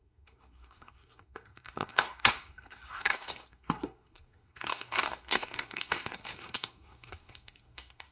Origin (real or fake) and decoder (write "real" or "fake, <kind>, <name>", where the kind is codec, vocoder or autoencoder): fake, codec, SNAC